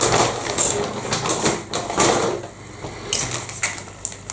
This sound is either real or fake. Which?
real